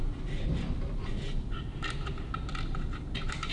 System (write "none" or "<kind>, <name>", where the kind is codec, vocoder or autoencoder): none